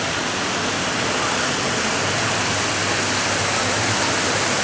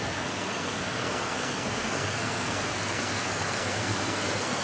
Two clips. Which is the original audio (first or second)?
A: first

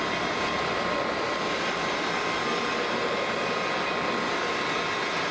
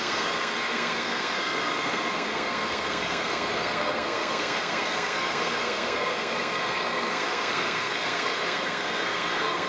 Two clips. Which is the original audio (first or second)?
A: first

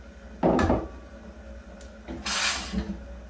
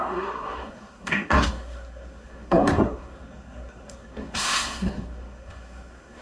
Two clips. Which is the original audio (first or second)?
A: first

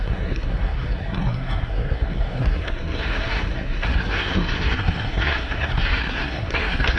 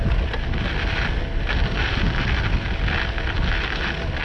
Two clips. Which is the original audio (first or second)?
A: second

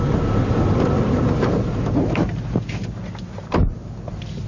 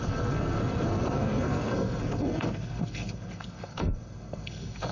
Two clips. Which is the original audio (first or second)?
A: first